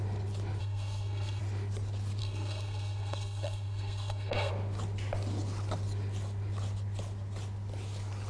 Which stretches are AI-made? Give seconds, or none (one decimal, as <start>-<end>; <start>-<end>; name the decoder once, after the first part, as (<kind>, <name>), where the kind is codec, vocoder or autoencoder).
0.6-1.4 (codec, SNAC); 2.2-4.5